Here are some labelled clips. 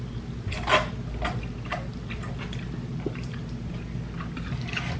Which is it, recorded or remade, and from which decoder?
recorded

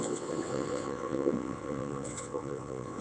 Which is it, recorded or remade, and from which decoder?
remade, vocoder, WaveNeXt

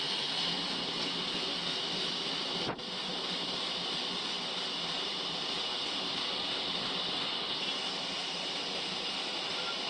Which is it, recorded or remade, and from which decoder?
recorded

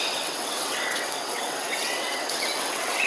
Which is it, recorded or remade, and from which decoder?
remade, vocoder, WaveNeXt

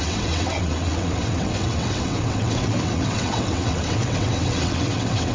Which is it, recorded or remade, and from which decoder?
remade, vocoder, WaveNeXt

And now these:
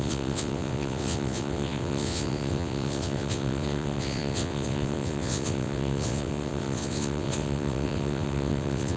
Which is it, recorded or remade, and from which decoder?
remade, vocoder, WaveNeXt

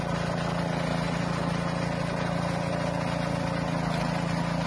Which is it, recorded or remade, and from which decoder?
recorded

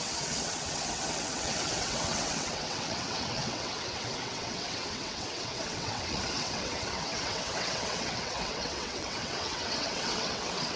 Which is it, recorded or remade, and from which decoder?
remade, vocoder, WaveNeXt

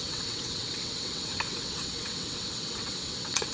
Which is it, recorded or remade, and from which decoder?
remade, vocoder, WaveNeXt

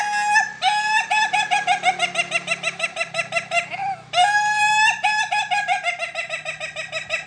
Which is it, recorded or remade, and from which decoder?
recorded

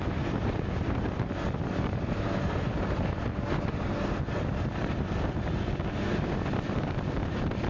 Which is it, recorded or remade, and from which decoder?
recorded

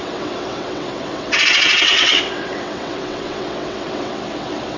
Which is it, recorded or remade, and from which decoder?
remade, vocoder, WaveNeXt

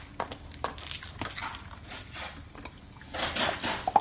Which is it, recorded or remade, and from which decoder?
recorded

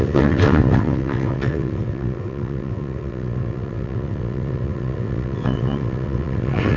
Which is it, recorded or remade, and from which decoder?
remade, vocoder, WaveNeXt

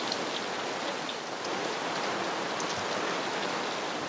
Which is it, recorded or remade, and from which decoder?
recorded